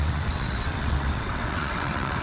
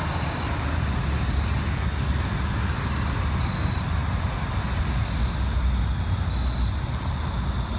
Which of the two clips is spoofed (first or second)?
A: first